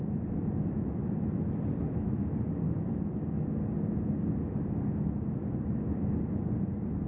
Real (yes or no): yes